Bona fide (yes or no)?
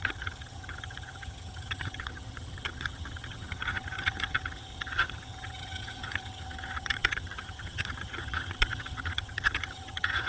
no